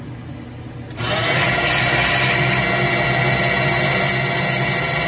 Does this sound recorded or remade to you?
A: recorded